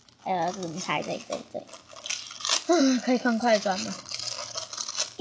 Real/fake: real